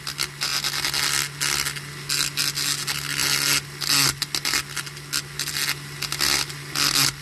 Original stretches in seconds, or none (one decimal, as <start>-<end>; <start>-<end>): 0.0-7.2